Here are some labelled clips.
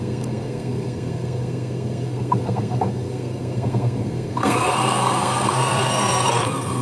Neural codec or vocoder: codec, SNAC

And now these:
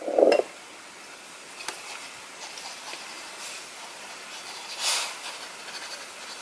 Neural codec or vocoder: none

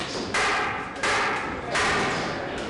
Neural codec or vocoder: none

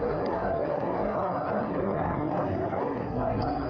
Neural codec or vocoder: codec, SNAC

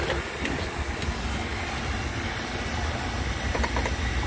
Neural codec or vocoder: none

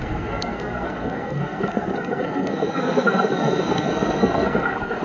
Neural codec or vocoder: codec, SNAC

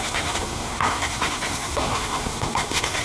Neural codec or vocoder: codec, SNAC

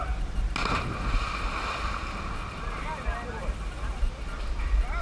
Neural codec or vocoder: none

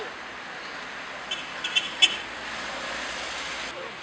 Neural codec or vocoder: none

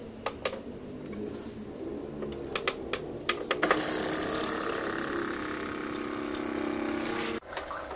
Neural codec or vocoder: none